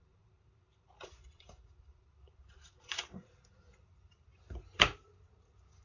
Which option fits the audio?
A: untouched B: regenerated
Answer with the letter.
B